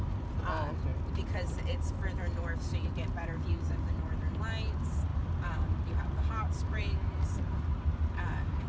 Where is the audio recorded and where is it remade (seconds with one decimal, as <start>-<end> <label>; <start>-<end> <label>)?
0.0-8.7 recorded